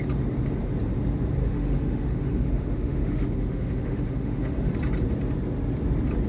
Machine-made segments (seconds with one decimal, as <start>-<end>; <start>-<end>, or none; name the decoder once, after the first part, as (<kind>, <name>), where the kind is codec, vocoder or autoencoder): 1.4-4.7 (autoencoder, DAC-VAE)